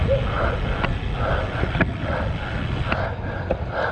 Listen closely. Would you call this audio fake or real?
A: real